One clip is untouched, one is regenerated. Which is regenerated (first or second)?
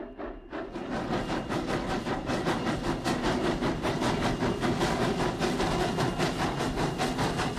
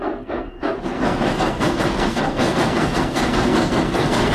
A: second